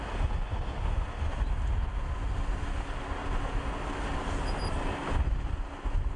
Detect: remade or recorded recorded